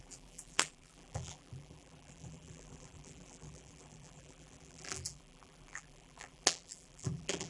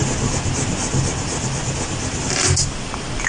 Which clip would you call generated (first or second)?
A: first